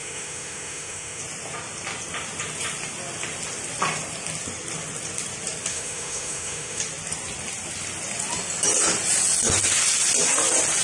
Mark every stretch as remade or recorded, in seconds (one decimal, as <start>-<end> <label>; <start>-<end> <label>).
0.0-1.2 remade; 1.2-5.7 recorded; 5.7-6.8 remade; 6.8-10.8 recorded